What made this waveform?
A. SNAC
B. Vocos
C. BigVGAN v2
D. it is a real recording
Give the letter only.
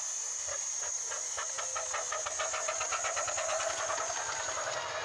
D